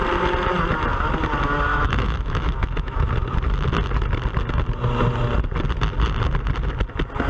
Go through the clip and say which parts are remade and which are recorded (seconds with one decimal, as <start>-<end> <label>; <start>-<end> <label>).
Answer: 0.0-1.7 recorded; 1.7-3.1 remade; 3.1-7.3 recorded